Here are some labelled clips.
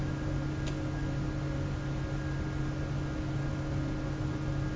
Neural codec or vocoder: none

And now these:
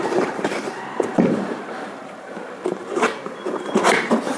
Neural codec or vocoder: vocoder, BigVGAN v2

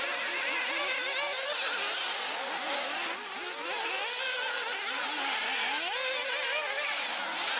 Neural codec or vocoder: none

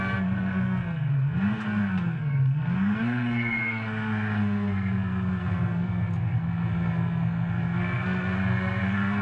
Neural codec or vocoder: codec, SNAC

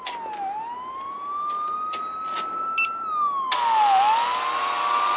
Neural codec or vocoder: none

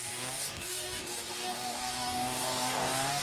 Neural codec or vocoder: codec, DAC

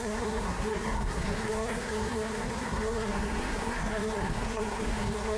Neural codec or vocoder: codec, SNAC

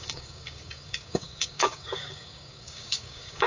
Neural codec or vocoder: codec, DAC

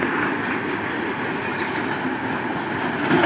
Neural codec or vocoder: none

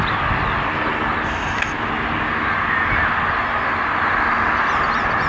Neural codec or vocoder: none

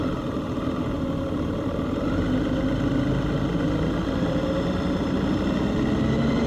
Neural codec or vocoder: none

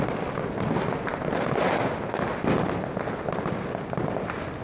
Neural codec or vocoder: none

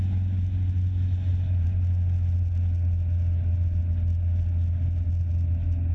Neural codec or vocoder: none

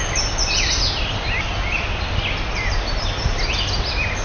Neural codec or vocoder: none